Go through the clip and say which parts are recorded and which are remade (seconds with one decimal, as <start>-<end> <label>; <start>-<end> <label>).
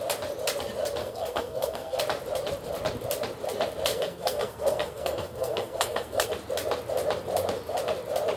0.0-1.0 recorded; 1.0-2.0 remade; 2.0-3.9 recorded; 3.9-6.3 remade; 6.3-8.4 recorded